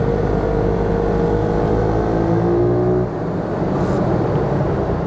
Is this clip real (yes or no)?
yes